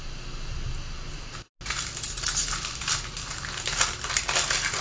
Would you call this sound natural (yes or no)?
yes